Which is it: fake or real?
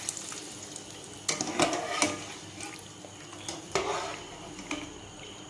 real